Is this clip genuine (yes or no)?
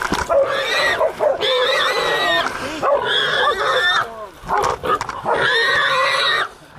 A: yes